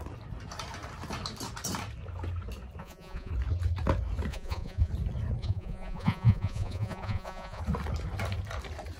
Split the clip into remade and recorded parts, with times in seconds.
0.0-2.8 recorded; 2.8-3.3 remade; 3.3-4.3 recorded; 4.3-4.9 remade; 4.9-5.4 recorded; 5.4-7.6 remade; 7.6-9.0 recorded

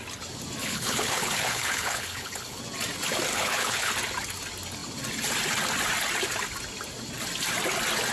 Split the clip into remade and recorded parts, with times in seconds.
0.0-0.6 recorded; 0.6-2.6 remade; 2.6-3.3 recorded; 3.3-3.9 remade; 3.9-8.1 recorded